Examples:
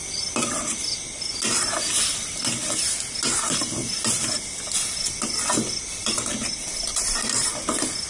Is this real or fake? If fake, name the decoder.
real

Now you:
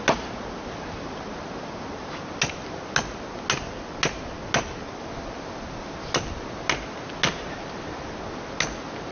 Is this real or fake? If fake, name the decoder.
real